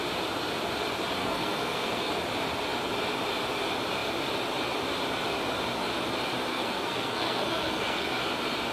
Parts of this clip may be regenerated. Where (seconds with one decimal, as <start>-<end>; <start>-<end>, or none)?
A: 1.2-2.1; 6.5-8.2